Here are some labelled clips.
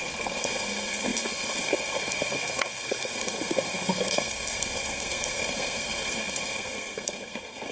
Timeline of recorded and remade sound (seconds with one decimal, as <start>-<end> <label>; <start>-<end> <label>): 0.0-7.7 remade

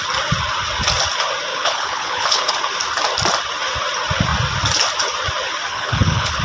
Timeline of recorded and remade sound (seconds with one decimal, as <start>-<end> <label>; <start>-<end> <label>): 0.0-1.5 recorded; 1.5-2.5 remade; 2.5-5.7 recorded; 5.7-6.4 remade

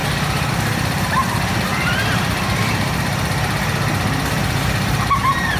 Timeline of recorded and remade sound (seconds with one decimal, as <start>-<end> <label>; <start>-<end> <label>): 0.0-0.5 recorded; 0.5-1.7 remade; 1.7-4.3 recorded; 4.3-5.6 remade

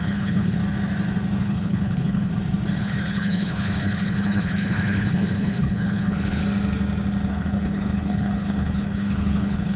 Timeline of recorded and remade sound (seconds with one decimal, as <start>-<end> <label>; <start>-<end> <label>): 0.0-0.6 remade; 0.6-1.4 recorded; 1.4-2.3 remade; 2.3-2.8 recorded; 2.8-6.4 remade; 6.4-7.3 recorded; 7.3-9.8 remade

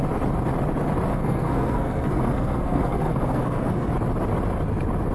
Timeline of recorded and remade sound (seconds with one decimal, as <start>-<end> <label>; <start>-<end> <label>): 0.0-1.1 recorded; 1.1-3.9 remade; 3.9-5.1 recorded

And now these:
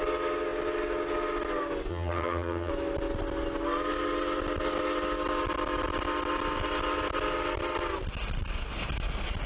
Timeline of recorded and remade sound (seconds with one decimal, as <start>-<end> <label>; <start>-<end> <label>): 0.0-1.9 recorded; 1.9-2.7 remade; 2.7-9.5 recorded